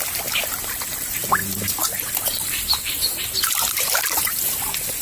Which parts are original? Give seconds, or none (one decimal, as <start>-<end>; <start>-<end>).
0.0-1.4; 4.4-5.0